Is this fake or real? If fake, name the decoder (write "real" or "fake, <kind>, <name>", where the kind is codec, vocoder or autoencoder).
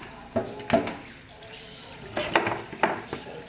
real